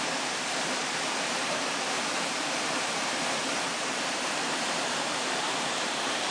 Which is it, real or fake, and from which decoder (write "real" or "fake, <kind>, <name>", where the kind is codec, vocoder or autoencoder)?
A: fake, vocoder, BigVGAN v2